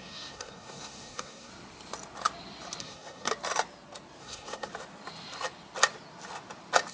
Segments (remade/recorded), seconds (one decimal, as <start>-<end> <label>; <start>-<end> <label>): 0.0-1.5 remade; 1.5-2.8 recorded; 2.8-3.3 remade; 3.3-4.2 recorded; 4.2-4.7 remade; 4.7-6.9 recorded